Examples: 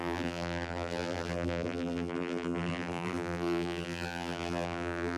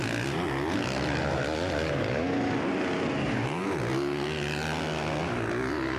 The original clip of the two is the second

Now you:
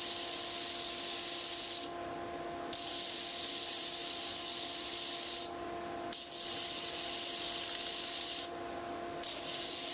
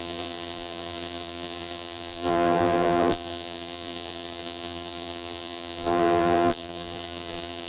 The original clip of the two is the first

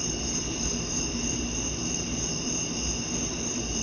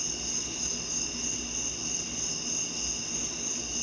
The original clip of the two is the second